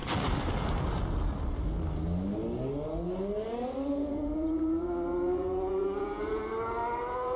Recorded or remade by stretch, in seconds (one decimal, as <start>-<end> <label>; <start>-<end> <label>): 0.0-3.9 recorded; 3.9-6.4 remade; 6.4-7.0 recorded; 7.0-7.4 remade